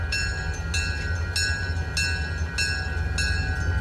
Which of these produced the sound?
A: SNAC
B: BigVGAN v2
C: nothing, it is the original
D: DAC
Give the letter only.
C